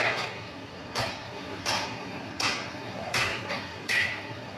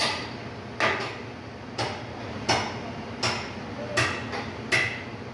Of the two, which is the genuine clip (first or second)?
second